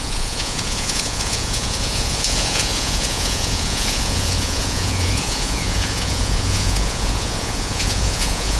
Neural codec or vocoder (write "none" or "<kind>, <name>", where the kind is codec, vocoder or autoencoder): vocoder, Vocos